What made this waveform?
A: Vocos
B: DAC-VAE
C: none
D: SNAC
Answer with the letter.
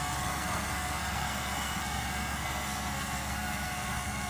D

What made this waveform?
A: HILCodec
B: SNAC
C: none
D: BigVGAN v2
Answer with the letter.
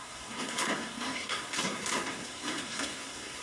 B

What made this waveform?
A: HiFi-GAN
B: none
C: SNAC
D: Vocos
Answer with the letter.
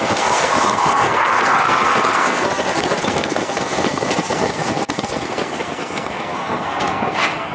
C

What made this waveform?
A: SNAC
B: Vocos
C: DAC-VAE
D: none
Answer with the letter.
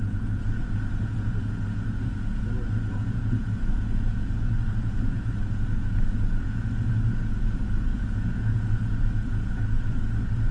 B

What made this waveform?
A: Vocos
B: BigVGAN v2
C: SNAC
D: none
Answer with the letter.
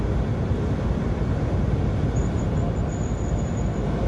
D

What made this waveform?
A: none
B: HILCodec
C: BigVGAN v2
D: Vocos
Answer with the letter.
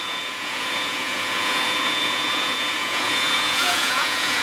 D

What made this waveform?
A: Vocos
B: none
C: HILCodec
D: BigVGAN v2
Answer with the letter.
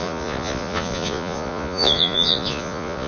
A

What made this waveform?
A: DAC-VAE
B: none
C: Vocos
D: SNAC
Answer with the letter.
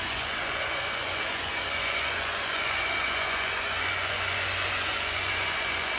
C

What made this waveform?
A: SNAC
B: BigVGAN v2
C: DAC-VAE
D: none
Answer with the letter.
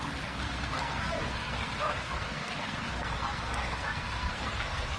A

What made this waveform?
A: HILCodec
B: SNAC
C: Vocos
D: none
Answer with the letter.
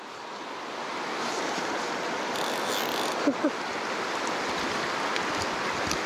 D